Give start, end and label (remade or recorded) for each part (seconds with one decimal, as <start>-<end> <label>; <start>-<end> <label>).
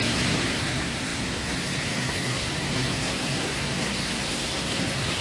0.0-5.2 remade